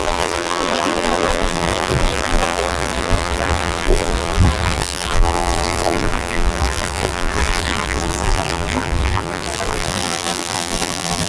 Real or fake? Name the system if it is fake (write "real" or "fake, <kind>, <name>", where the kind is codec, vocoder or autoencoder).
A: fake, vocoder, BigVGAN v2